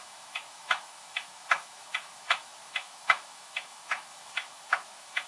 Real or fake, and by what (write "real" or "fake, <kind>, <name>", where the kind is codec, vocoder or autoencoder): fake, autoencoder, DAC-VAE